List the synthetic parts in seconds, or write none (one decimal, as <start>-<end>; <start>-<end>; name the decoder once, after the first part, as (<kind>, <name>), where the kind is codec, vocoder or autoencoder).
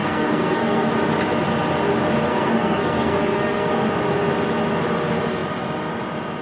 0.0-0.9 (codec, SNAC); 2.3-3.7